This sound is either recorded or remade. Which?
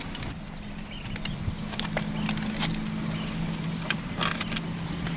recorded